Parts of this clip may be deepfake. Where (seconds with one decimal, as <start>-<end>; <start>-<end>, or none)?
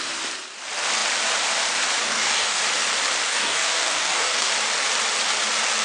2.0-2.6; 3.3-4.5